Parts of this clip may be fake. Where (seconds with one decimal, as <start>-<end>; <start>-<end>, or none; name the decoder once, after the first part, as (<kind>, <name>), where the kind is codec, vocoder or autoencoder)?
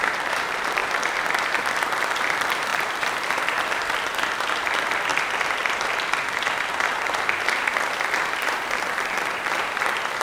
0.0-2.7 (vocoder, BigVGAN v2); 3.2-5.1; 5.9-10.2